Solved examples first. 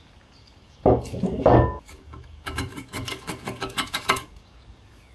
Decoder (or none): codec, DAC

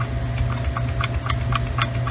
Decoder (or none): none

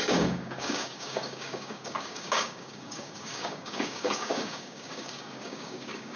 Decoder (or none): codec, DAC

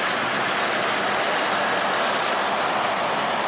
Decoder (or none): none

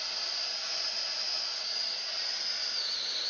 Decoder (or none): none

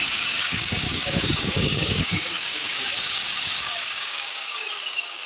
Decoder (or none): codec, DAC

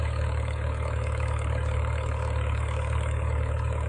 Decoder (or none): codec, DAC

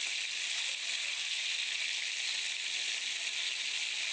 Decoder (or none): none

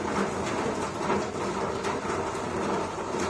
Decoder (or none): none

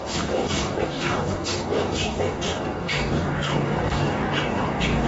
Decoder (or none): codec, DAC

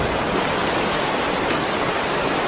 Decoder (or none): none